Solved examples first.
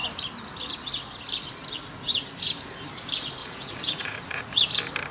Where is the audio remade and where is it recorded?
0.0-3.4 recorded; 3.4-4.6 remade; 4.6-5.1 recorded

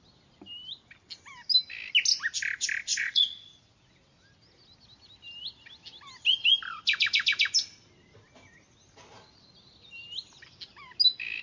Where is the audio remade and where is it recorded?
0.0-2.9 recorded; 2.9-3.6 remade; 3.6-11.4 recorded

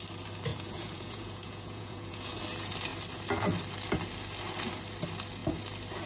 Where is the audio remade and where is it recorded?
0.0-0.5 recorded; 0.5-2.4 remade; 2.4-6.1 recorded